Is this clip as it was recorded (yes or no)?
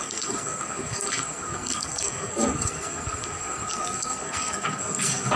no